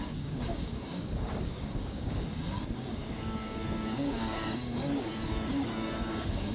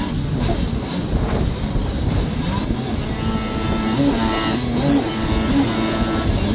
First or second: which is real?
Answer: second